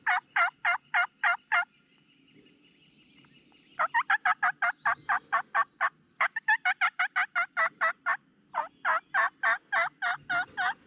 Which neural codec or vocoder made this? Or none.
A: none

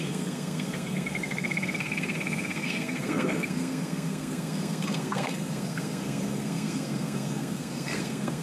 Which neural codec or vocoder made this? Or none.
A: codec, SNAC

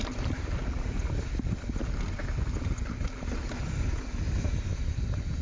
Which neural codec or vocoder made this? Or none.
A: none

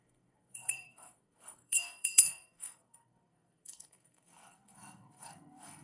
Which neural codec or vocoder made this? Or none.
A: codec, SNAC